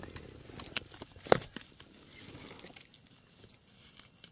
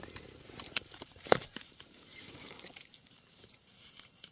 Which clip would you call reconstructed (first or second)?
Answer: second